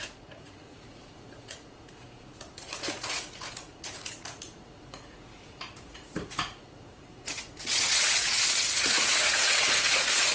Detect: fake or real fake